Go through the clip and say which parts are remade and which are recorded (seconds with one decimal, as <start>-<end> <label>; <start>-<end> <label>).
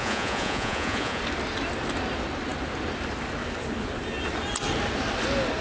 0.0-1.2 remade; 1.2-5.6 recorded